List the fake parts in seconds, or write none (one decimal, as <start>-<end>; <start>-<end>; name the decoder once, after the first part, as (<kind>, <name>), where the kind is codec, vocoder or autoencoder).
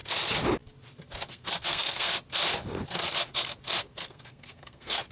1.3-2.1 (codec, SNAC); 3.8-5.1